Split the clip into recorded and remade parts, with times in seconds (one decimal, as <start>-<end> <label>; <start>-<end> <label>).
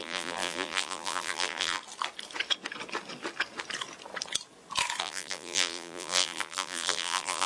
0.0-1.8 remade; 1.8-5.0 recorded; 5.0-7.5 remade